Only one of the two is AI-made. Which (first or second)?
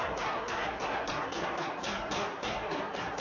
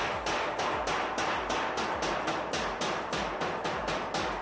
first